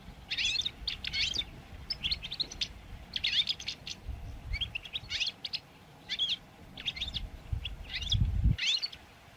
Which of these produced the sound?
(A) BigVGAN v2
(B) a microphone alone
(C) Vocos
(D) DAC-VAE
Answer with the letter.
B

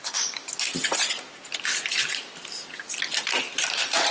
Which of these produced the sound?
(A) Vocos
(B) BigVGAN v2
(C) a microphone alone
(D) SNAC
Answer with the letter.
C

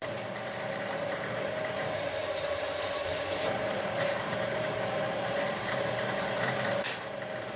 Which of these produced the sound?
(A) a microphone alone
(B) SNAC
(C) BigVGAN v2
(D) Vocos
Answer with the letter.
C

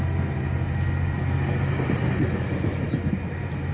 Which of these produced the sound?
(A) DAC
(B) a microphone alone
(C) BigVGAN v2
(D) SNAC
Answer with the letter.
B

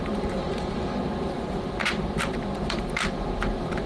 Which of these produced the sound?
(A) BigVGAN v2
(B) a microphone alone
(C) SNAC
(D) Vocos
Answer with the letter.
A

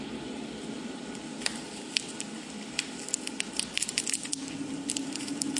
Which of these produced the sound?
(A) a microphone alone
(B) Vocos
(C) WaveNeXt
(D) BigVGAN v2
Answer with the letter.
D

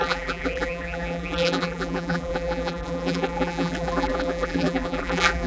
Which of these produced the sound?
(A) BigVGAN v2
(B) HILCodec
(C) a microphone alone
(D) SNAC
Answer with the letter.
A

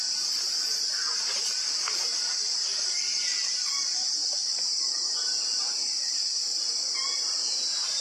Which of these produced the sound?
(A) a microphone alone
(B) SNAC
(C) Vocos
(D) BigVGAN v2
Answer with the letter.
D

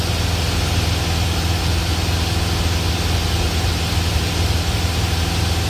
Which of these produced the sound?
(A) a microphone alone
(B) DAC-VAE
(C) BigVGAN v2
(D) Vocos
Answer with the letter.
A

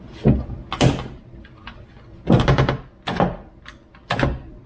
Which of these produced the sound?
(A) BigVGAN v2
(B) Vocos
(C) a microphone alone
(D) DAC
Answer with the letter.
C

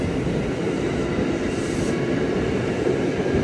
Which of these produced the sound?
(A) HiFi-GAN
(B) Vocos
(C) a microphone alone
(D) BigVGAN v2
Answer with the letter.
C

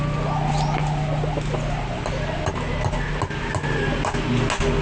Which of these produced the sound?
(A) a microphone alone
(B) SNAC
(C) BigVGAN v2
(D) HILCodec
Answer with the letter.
A